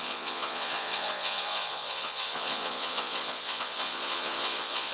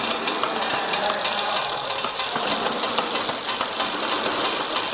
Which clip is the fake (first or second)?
first